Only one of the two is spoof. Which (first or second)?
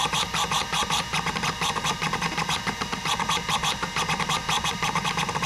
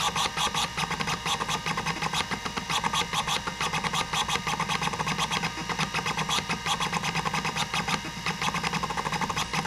first